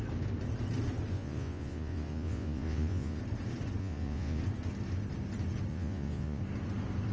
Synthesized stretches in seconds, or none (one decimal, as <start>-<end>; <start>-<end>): 1.1-3.2; 3.8-4.4; 5.7-6.4